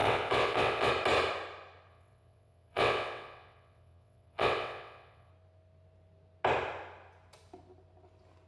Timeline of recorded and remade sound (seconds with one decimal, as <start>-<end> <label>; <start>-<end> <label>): 0.0-0.9 remade; 0.9-1.9 recorded; 1.9-5.3 remade; 5.3-8.5 recorded